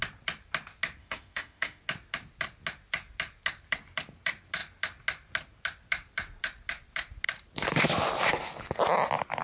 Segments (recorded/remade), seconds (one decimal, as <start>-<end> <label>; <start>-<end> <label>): 0.0-1.0 recorded; 1.0-1.8 remade; 1.8-9.4 recorded